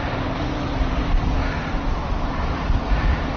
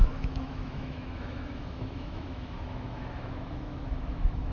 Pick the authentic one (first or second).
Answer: first